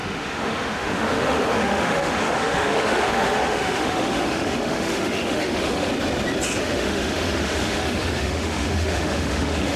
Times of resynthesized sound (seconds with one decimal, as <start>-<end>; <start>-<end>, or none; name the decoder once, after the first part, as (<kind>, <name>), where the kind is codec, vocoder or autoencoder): 0.0-5.9 (autoencoder, DAC-VAE); 6.6-9.8